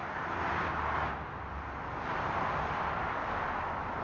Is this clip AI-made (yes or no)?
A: no